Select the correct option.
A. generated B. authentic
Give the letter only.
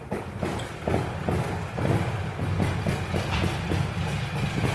B